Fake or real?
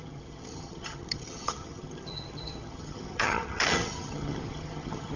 fake